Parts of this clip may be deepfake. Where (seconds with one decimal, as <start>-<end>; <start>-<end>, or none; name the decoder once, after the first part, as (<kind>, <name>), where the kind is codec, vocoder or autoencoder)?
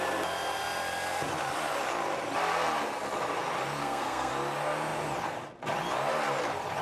3.8-4.3 (codec, SNAC)